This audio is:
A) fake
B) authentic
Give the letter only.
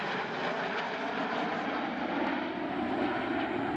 B